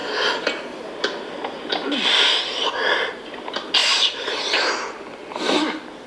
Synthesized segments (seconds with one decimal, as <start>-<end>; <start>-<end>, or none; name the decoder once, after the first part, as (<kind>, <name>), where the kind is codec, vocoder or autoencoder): 0.0-6.1 (vocoder, BigVGAN v2)